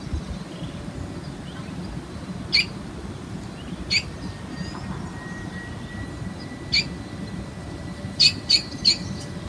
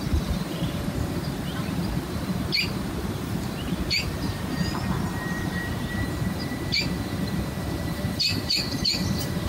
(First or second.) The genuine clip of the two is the first